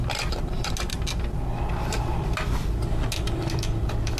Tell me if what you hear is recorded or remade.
recorded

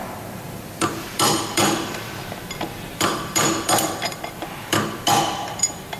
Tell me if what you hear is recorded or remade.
remade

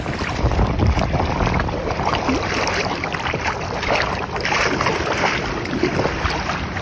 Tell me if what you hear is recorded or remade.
remade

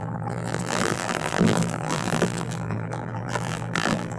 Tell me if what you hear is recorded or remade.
remade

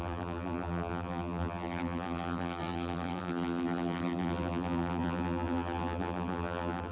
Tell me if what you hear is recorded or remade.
remade